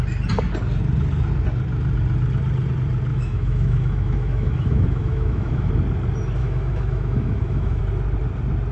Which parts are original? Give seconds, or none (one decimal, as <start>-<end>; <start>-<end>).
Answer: 0.0-3.1; 5.7-6.4; 7.8-8.7